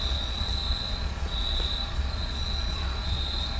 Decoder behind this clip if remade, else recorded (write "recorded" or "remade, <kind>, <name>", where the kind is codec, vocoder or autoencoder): remade, vocoder, Vocos